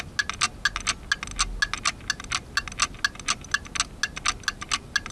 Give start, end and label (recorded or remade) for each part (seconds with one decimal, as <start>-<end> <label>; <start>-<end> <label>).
0.0-5.1 recorded